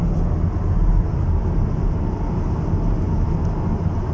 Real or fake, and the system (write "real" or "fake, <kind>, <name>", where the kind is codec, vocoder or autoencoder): real